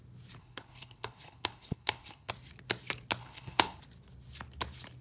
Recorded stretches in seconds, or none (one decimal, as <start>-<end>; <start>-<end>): 0.0-0.4; 2.3-3.2; 3.8-5.0